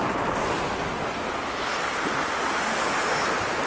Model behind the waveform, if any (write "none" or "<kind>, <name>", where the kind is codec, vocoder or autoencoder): none